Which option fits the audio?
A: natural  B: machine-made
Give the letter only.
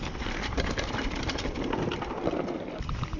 B